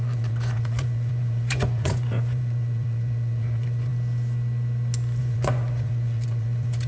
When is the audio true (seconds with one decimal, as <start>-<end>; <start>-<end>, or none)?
3.9-5.2